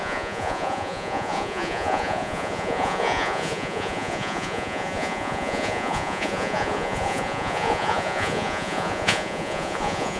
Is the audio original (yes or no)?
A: no